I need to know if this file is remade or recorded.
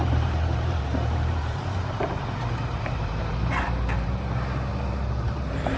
remade